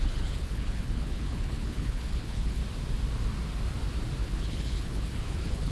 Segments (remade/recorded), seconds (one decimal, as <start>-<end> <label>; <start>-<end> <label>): 0.0-2.6 remade; 2.6-4.2 recorded; 4.2-5.7 remade